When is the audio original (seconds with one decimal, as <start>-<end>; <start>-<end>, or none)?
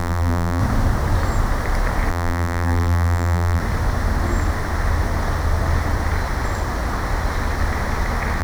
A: 0.6-2.1; 3.6-8.4